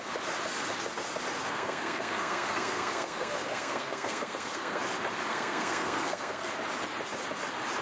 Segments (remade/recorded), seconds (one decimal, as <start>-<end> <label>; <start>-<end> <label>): 0.0-1.4 recorded; 1.4-4.8 remade; 4.8-5.3 recorded; 5.3-6.5 remade; 6.5-7.8 recorded